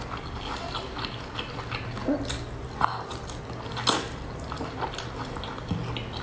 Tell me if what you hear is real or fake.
real